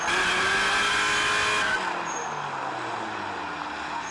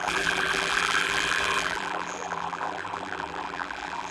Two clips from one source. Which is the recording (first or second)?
first